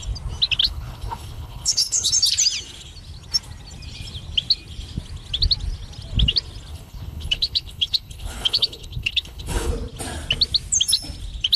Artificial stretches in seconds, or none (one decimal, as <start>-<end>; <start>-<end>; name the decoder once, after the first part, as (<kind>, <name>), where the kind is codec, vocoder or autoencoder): 0.6-2.1 (codec, HILCodec); 6.7-9.7